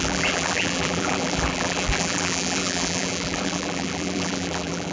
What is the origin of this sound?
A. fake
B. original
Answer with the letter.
A